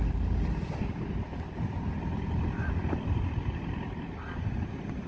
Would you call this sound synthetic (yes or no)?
no